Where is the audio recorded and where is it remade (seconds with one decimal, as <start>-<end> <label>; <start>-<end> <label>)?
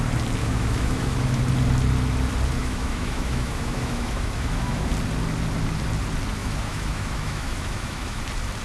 0.0-0.4 recorded; 0.4-1.4 remade; 1.4-2.6 recorded; 2.6-4.9 remade; 4.9-6.4 recorded; 6.4-8.2 remade; 8.2-8.6 recorded